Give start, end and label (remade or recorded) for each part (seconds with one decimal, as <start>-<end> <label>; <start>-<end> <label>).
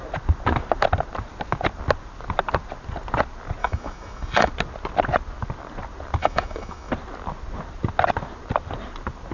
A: 0.0-3.6 recorded; 3.6-4.5 remade; 4.5-6.2 recorded; 6.2-6.9 remade; 6.9-9.3 recorded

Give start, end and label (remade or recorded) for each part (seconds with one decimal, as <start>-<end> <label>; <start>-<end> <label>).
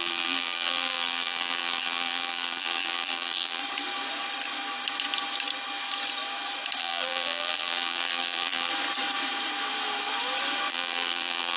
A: 0.0-3.6 remade; 3.6-6.8 recorded; 6.8-8.7 remade; 8.7-10.7 recorded; 10.7-11.6 remade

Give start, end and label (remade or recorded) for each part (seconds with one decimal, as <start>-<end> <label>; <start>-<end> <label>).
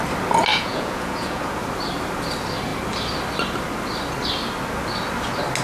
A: 0.0-0.5 recorded; 0.5-1.6 remade; 1.6-5.6 recorded